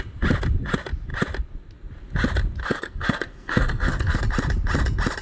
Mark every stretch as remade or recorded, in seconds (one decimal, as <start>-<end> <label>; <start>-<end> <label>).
0.0-2.6 recorded; 2.6-4.2 remade; 4.2-5.2 recorded